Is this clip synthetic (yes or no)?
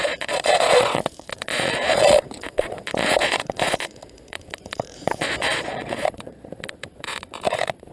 yes